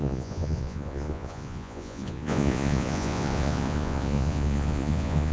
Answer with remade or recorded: remade